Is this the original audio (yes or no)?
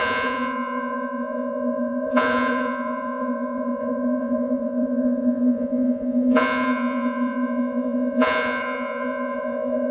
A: no